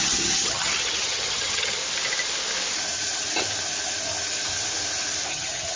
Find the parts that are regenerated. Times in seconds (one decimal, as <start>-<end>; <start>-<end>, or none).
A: 0.0-1.8; 5.3-5.8